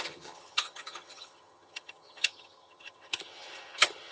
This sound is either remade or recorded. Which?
remade